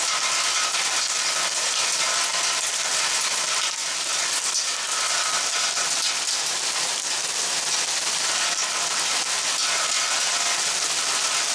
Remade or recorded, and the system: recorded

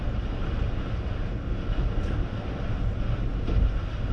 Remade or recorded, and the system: recorded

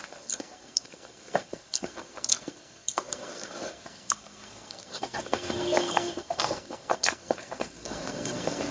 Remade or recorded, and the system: remade, codec, SNAC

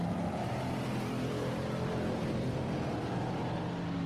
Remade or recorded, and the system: remade, vocoder, BigVGAN v2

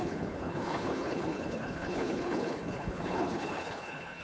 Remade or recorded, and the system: remade, codec, HILCodec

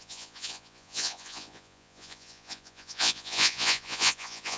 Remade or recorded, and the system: remade, vocoder, Vocos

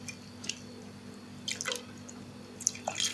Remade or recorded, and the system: recorded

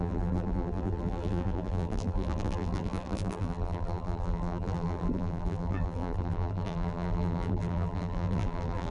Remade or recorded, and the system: remade, vocoder, BigVGAN v2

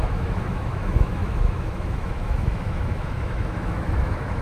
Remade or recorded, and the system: remade, autoencoder, DAC-VAE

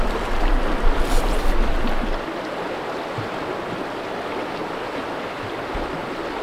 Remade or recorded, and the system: recorded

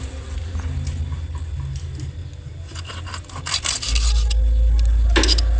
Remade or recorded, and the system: recorded